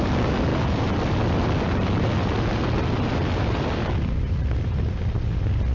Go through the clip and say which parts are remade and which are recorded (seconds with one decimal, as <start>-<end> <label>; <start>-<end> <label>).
0.0-5.7 recorded